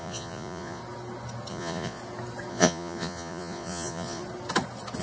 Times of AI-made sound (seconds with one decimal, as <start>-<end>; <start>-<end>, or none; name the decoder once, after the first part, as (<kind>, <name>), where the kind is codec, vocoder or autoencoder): 0.0-0.8 (vocoder, Vocos); 1.5-2.0; 2.5-4.2